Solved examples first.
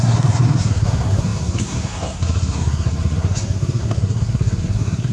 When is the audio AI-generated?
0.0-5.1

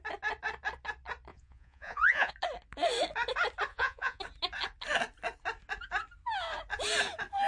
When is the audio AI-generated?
1.3-2.3; 3.7-4.2

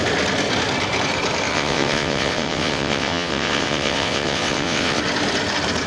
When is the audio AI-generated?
1.5-5.0

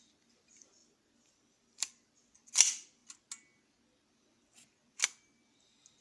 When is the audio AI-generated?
0.8-2.5

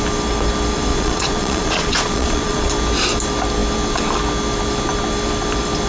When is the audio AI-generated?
0.9-2.7